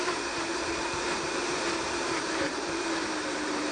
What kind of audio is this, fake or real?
fake